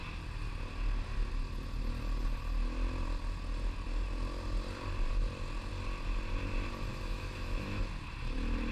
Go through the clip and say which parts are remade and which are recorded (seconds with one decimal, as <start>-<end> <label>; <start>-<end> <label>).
0.0-6.9 recorded; 6.9-7.8 remade; 7.8-8.7 recorded